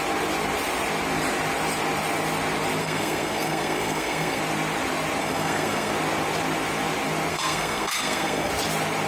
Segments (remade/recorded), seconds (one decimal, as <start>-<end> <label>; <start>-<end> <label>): 0.0-2.8 recorded; 2.8-4.4 remade; 4.4-5.2 recorded; 5.2-5.9 remade; 5.9-7.3 recorded; 7.3-8.5 remade; 8.5-9.1 recorded